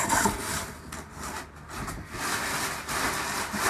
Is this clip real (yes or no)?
yes